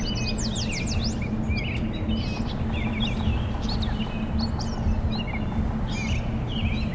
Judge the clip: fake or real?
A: real